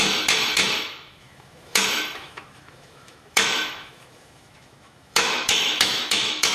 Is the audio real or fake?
fake